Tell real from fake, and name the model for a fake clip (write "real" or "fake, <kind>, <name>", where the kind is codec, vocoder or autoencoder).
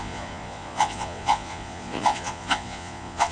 fake, vocoder, Vocos